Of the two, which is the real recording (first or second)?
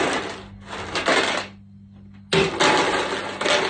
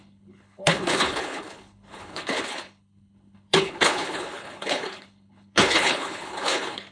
first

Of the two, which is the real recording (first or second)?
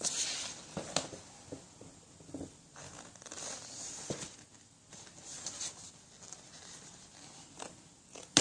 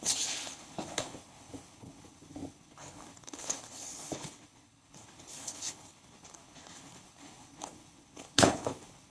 first